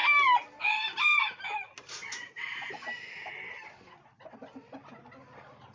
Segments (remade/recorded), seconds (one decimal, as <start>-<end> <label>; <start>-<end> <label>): 0.0-5.7 recorded